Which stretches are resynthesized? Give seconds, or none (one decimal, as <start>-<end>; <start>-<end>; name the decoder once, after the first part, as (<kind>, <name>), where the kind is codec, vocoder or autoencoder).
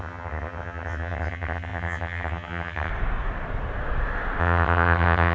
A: 0.0-2.9 (vocoder, HiFi-GAN); 4.4-5.3